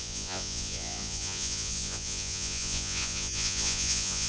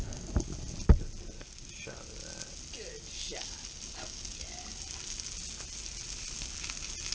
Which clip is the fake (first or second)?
first